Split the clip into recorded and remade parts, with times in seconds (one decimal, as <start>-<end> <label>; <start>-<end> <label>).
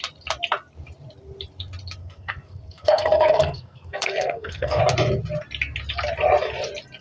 0.0-2.0 recorded; 2.0-4.8 remade; 4.8-7.0 recorded